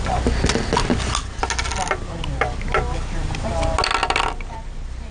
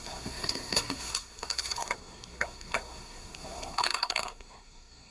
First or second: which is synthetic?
second